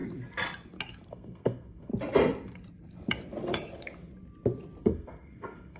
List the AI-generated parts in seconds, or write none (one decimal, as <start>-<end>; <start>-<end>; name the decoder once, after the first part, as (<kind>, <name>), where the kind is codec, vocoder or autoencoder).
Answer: 1.1-1.9 (codec, SNAC); 4.8-5.8